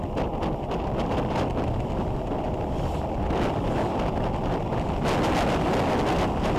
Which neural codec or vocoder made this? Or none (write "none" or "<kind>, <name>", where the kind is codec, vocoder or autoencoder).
none